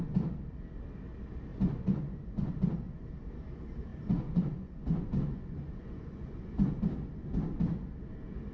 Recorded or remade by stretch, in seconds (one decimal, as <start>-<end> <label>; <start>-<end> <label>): 0.0-1.5 recorded; 1.5-2.5 remade; 2.5-3.9 recorded; 3.9-6.8 remade; 6.8-8.5 recorded